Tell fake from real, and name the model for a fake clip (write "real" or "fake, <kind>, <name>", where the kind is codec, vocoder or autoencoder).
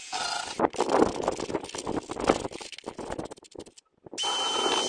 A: real